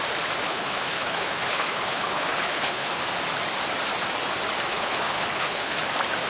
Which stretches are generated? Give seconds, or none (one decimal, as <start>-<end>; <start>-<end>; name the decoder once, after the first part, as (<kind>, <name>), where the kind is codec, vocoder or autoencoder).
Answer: 0.4-3.0 (codec, HILCodec); 4.7-5.8